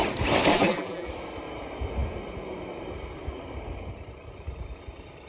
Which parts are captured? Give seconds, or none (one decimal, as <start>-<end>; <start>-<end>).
0.0-0.5; 1.1-5.3